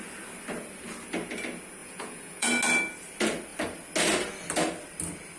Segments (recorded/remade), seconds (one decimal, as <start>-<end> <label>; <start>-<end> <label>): 0.0-1.8 recorded; 1.8-2.5 remade; 2.5-5.4 recorded